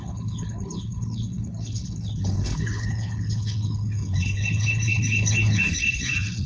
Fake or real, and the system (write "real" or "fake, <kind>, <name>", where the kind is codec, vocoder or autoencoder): fake, codec, HILCodec